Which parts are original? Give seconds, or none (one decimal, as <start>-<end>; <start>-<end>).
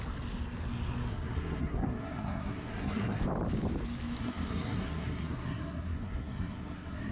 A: 0.0-1.1; 3.2-4.2